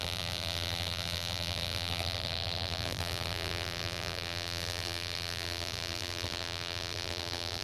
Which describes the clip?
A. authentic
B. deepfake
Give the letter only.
B